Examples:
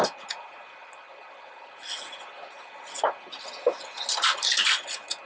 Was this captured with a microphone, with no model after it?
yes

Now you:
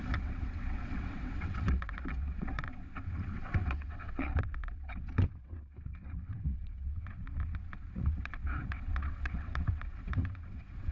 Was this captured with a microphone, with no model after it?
no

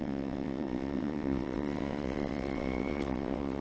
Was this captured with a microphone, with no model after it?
no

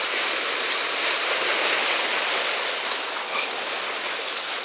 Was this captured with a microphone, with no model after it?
yes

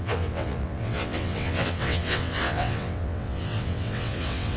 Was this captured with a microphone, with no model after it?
no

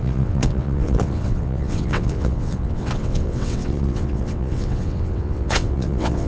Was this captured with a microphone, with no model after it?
no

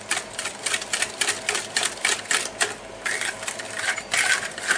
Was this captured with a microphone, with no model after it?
yes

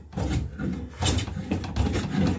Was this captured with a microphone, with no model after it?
yes